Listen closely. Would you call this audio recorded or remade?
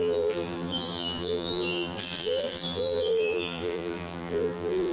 remade